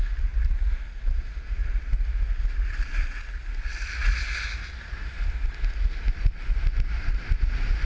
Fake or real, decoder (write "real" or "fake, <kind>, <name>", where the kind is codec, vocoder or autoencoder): real